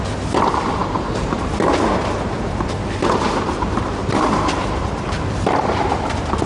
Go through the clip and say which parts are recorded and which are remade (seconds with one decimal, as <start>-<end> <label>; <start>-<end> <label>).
0.0-0.8 recorded; 0.8-1.6 remade; 1.6-2.0 recorded; 2.0-5.9 remade; 5.9-6.5 recorded